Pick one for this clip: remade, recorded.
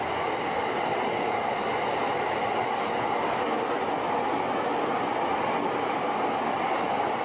recorded